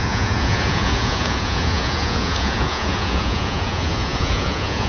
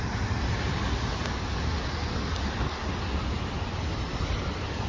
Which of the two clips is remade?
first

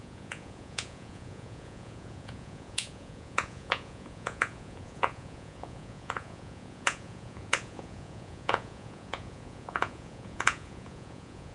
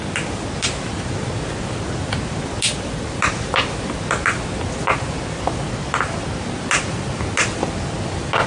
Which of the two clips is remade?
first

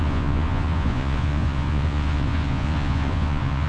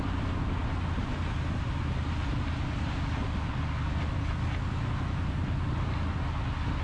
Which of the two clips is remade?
first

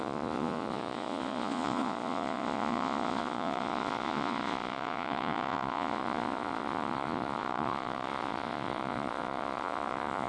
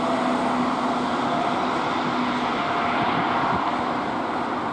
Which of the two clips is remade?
first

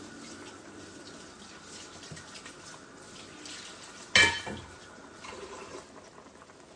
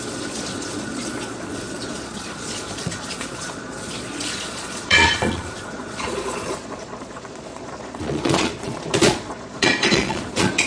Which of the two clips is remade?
second